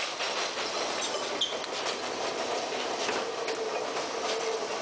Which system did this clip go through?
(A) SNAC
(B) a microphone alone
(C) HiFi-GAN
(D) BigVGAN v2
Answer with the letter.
B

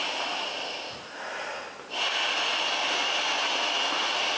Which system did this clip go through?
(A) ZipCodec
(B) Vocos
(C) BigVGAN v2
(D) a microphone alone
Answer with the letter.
D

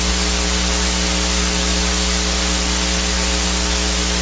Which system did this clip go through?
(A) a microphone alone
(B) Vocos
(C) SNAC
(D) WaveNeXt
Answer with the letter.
A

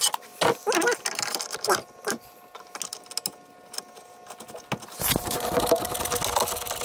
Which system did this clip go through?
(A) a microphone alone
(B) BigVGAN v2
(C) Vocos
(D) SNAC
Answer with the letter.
A